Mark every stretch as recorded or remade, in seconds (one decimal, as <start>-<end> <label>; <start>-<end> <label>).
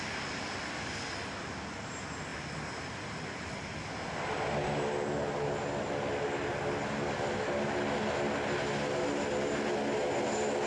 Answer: 0.0-10.7 recorded